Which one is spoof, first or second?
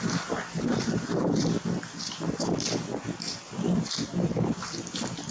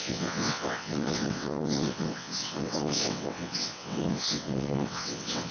second